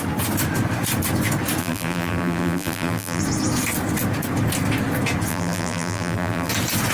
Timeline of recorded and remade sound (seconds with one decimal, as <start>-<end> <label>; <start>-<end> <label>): 0.0-1.6 recorded; 1.6-3.2 remade; 3.2-5.3 recorded; 5.3-6.5 remade; 6.5-6.9 recorded

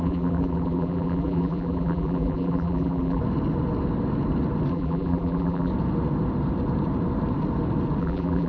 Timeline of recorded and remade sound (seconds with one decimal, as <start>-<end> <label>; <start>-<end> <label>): 0.0-3.2 remade; 3.2-4.7 recorded; 4.7-5.7 remade; 5.7-8.0 recorded; 8.0-8.5 remade

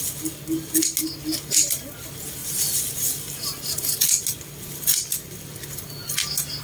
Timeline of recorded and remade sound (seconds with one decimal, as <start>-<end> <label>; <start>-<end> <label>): 0.0-3.5 recorded; 3.5-4.0 remade; 4.0-6.6 recorded

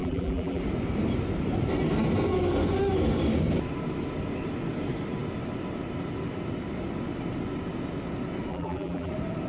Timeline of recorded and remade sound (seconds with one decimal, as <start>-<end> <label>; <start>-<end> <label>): 0.0-0.6 remade; 0.6-8.5 recorded; 8.5-9.1 remade; 9.1-9.5 recorded

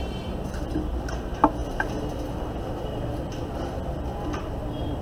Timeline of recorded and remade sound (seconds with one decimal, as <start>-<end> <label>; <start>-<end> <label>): 0.0-4.1 recorded; 4.1-5.0 remade

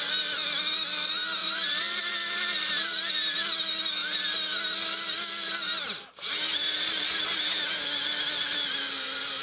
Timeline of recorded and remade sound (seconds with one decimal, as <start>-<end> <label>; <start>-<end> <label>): 0.0-1.4 recorded; 1.4-2.0 remade; 2.0-9.4 recorded

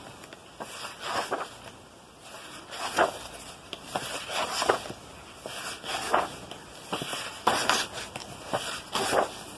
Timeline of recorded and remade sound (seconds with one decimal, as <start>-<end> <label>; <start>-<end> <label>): 0.0-9.6 recorded

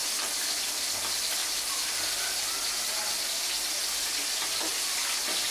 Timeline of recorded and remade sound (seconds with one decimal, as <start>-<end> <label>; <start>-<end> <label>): 0.0-1.4 recorded; 1.4-2.0 remade; 2.0-5.5 recorded